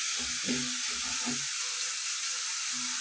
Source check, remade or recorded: recorded